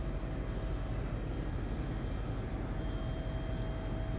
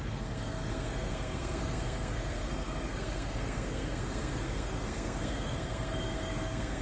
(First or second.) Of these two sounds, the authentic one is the first